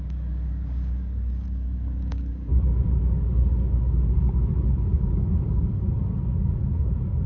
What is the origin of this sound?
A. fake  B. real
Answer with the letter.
A